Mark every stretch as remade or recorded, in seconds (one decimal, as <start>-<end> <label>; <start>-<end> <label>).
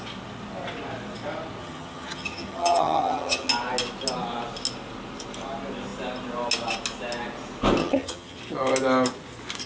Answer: 0.0-1.6 recorded; 1.6-3.5 remade; 3.5-7.8 recorded; 7.8-8.4 remade; 8.4-9.7 recorded